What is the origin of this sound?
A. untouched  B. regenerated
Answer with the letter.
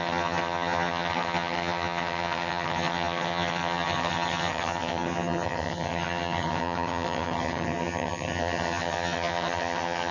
B